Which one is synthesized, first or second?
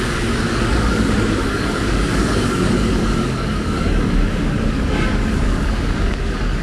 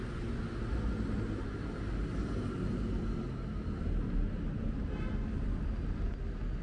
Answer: first